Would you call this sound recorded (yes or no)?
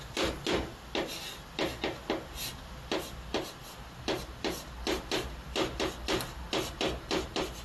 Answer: yes